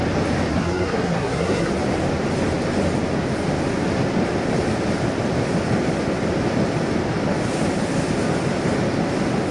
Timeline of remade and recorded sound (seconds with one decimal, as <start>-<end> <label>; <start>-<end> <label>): 0.0-0.5 recorded; 0.5-1.7 remade; 1.7-9.5 recorded